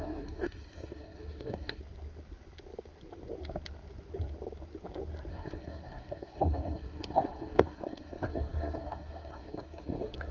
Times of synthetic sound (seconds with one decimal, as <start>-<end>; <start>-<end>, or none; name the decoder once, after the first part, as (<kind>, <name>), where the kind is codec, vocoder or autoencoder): 0.0-1.8 (codec, SNAC); 5.3-10.3